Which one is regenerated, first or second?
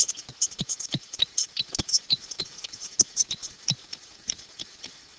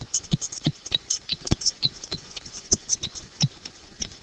second